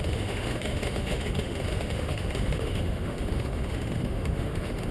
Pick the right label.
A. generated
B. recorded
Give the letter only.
A